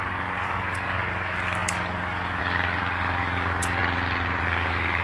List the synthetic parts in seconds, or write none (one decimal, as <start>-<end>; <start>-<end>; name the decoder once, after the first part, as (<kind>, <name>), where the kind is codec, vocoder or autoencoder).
0.0-3.8 (codec, DAC); 4.4-5.0